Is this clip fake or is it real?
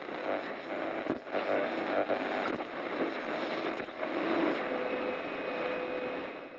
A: real